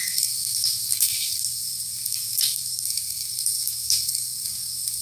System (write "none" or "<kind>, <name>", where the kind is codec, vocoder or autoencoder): codec, SNAC